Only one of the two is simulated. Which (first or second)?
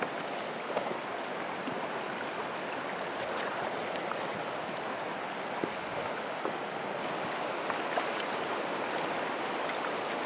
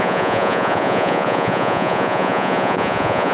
second